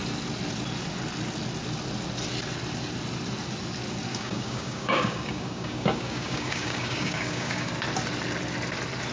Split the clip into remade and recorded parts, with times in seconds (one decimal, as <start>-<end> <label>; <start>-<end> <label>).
0.0-4.1 recorded; 4.1-7.7 remade; 7.7-9.1 recorded